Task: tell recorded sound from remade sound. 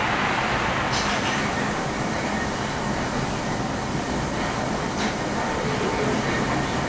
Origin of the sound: recorded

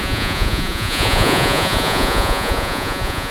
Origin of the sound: remade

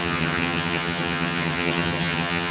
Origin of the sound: remade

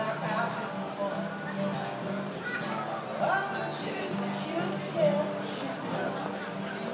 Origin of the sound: recorded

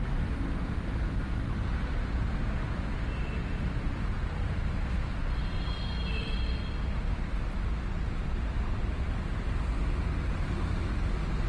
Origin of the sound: recorded